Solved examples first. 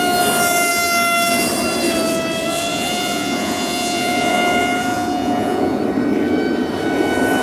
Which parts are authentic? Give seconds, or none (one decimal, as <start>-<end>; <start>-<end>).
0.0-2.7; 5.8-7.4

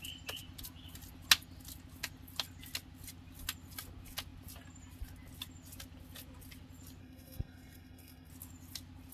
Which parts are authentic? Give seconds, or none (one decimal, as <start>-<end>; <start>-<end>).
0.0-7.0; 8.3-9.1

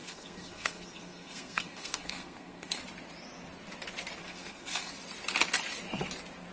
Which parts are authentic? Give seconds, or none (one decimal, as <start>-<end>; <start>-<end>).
2.8-4.2; 4.9-6.5